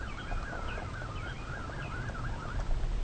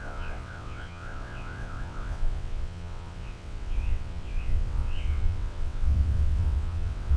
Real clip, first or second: first